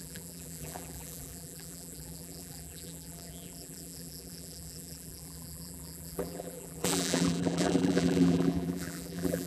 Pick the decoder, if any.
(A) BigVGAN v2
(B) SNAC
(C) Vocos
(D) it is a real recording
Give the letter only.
A